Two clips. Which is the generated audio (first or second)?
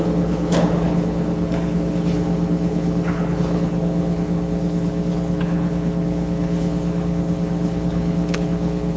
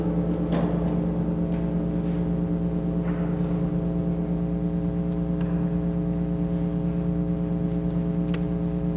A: first